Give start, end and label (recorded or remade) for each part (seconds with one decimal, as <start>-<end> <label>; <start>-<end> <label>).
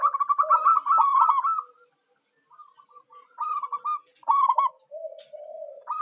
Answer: 0.0-6.0 recorded